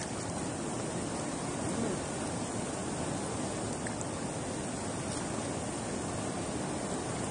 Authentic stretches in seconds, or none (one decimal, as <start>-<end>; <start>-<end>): 0.0-7.3